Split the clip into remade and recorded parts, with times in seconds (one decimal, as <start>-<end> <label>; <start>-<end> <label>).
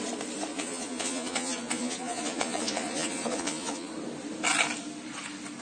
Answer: 0.0-0.5 recorded; 0.5-3.9 remade; 3.9-5.6 recorded